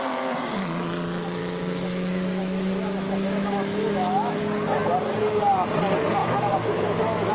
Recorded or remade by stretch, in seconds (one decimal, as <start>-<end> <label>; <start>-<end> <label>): 0.0-1.4 recorded; 1.4-4.4 remade; 4.4-6.2 recorded; 6.2-7.3 remade